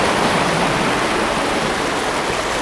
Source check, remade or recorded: recorded